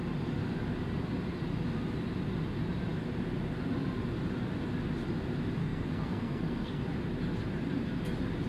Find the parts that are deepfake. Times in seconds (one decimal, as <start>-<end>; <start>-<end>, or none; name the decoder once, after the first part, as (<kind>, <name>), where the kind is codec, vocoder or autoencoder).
5.6-6.8 (codec, SNAC)